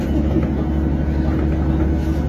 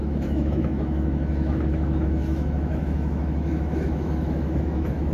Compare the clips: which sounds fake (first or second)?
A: second